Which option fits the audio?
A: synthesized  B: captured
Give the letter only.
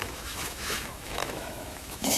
A